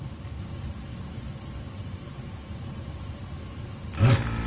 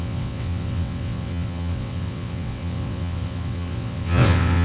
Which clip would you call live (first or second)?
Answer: first